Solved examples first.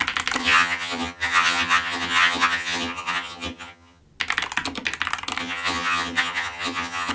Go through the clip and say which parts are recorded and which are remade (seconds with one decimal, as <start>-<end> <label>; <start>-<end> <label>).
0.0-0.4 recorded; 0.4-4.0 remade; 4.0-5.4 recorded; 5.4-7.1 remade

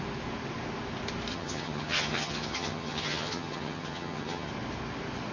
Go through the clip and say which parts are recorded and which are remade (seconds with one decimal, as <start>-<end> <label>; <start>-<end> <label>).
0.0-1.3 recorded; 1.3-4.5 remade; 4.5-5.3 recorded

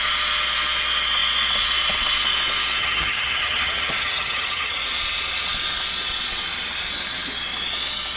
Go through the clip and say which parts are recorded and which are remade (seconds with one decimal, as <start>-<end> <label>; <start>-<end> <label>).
0.0-2.8 recorded; 2.8-4.8 remade; 4.8-8.2 recorded

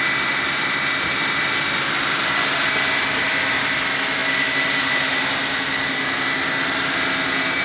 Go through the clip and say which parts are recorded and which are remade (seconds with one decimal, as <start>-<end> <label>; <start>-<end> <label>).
0.0-7.6 recorded